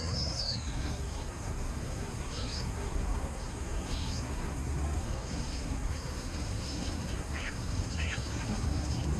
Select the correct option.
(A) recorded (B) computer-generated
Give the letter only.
B